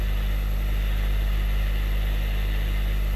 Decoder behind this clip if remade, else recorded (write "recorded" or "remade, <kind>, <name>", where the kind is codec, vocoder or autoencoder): recorded